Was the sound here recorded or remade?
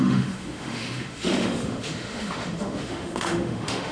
remade